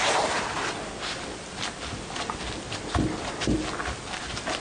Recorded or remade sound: recorded